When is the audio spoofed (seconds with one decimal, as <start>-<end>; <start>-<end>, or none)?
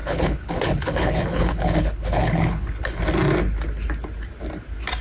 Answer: 0.0-3.0